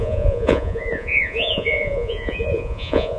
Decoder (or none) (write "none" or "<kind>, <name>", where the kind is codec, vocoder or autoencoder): vocoder, Vocos